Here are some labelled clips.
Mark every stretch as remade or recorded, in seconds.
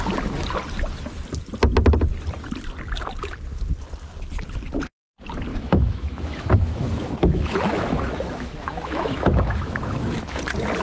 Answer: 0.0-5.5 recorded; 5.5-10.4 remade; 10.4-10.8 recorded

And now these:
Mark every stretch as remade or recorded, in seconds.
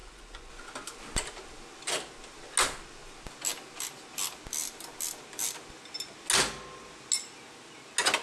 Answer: 0.0-0.5 remade; 0.5-8.2 recorded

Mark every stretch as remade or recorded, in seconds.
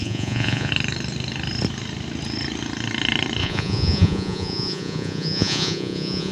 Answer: 0.0-0.7 remade; 0.7-3.4 recorded; 3.4-6.3 remade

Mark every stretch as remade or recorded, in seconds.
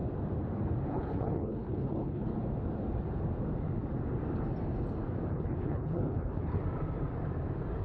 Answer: 0.0-0.9 recorded; 0.9-2.3 remade; 2.3-5.3 recorded; 5.3-6.6 remade; 6.6-7.8 recorded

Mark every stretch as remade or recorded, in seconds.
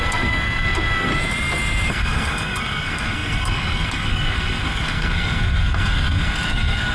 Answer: 0.0-1.1 remade; 1.1-1.9 recorded; 1.9-6.9 remade